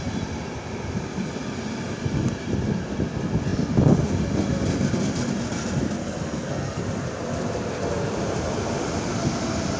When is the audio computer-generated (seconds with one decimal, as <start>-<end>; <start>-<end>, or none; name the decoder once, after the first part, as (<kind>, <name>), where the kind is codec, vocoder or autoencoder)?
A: 6.0-6.8 (codec, SNAC)